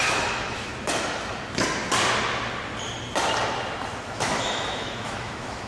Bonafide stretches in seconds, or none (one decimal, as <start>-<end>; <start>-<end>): 0.7-4.1